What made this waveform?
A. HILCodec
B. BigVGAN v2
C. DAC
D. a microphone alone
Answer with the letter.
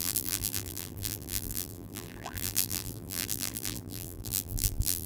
B